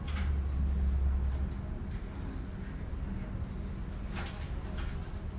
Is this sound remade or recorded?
recorded